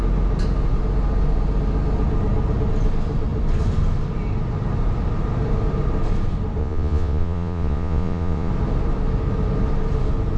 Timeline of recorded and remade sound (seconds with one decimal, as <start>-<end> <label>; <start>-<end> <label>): 0.0-6.6 recorded; 6.6-8.5 remade; 8.5-10.4 recorded